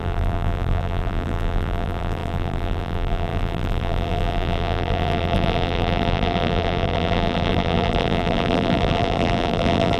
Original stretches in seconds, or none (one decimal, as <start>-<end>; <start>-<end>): none